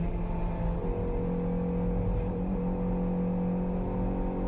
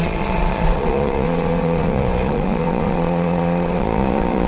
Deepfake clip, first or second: second